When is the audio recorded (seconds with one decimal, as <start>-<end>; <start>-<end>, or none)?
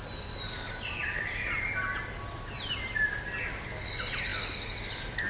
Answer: 0.0-5.3